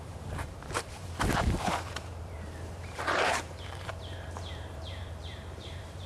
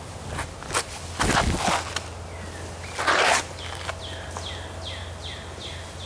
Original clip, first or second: second